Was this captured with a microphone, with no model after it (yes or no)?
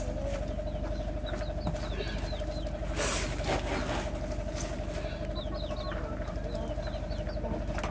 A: yes